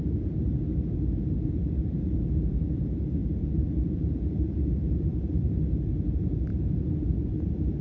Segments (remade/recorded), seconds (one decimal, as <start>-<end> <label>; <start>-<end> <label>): 0.0-7.8 remade